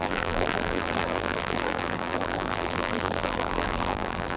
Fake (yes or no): yes